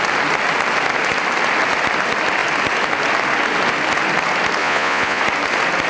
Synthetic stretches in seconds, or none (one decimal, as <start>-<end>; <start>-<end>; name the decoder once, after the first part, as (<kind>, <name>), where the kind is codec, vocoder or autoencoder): 4.6-5.2 (vocoder, Vocos)

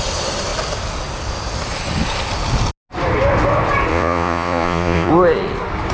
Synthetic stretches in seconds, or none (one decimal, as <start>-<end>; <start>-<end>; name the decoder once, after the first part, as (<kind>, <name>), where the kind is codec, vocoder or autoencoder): 3.9-5.1 (vocoder, Vocos)